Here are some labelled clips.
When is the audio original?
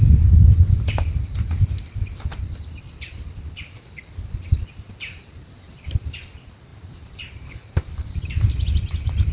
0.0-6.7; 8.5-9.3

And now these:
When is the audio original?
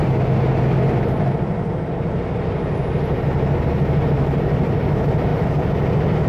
0.0-6.3